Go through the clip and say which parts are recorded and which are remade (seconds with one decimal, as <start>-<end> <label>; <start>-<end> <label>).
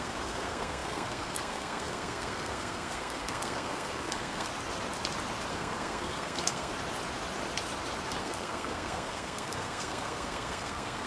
0.0-4.5 remade; 4.5-5.5 recorded; 5.5-6.7 remade; 6.7-8.2 recorded; 8.2-11.1 remade